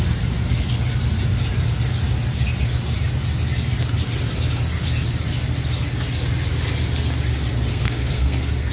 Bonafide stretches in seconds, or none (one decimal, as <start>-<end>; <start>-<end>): 0.0-7.7